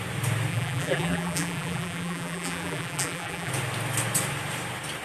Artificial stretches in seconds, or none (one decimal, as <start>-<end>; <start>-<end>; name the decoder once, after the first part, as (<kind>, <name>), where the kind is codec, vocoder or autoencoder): 0.5-3.5 (vocoder, BigVGAN v2)

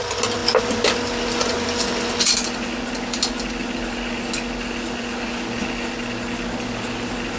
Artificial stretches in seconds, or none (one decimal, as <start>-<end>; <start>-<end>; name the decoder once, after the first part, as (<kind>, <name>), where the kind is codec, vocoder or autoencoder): none

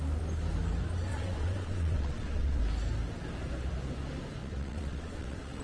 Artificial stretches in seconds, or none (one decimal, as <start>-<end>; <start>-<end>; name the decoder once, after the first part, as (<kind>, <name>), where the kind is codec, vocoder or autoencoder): 1.1-2.6 (vocoder, WaveNeXt); 4.4-5.6

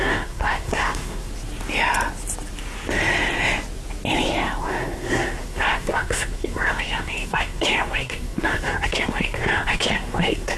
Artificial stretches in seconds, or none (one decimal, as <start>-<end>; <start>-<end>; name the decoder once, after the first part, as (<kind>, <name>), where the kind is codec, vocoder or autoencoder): 0.0-1.3 (codec, SNAC); 4.6-10.6

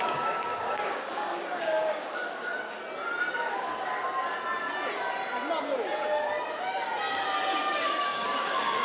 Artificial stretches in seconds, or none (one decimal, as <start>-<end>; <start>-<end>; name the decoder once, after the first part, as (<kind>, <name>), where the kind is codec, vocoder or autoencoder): 0.0-2.5 (codec, DAC); 7.7-8.8

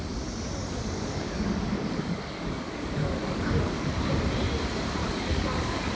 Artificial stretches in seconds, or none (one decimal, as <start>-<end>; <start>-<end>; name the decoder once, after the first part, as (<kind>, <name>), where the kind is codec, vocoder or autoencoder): 0.6-4.1 (codec, DAC); 5.0-5.9